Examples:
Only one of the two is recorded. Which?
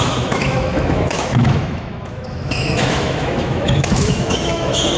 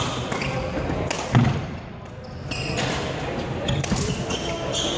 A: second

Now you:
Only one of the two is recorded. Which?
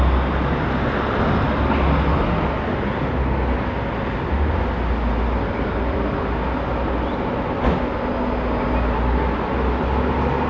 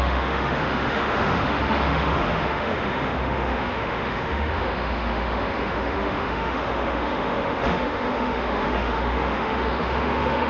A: first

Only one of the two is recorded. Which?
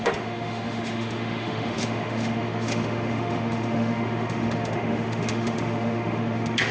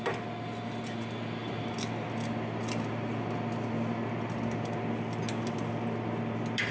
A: second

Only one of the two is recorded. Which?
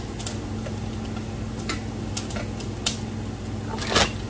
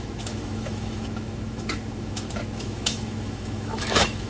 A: first